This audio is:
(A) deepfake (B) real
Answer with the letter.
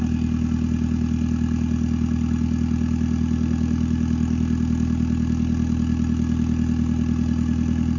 B